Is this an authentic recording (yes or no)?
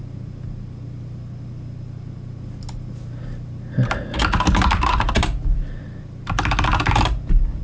yes